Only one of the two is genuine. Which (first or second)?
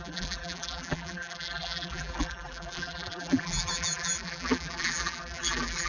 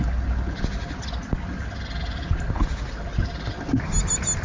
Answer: second